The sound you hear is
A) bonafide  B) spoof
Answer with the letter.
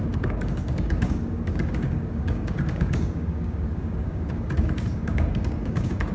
B